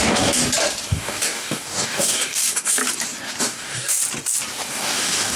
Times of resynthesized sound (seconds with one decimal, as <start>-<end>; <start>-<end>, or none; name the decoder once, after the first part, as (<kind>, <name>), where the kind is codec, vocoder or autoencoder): 0.0-0.4 (codec, DAC); 0.9-2.8; 3.4-4.0; 4.7-5.4